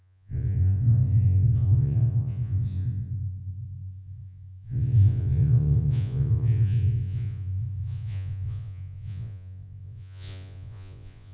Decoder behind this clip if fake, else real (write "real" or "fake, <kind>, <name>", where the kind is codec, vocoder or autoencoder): fake, vocoder, Vocos